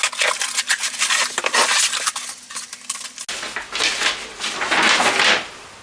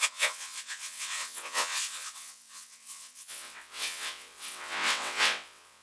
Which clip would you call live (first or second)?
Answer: first